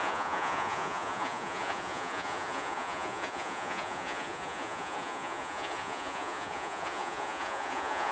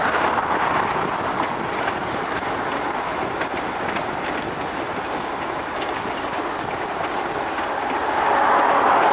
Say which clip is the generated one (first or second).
first